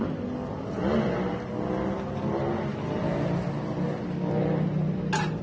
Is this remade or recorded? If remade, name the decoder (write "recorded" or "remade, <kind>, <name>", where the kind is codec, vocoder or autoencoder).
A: recorded